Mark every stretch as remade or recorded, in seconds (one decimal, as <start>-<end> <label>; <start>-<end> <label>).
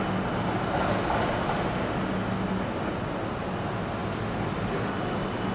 0.0-5.5 recorded